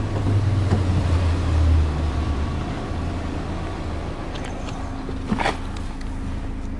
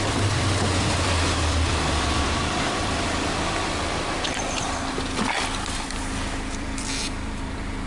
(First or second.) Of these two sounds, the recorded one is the first